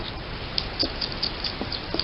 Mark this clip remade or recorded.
recorded